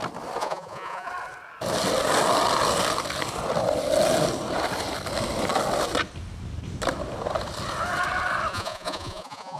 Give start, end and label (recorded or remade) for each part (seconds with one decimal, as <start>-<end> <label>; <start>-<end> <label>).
0.0-0.4 recorded; 0.4-1.1 remade; 1.1-8.5 recorded; 8.5-9.6 remade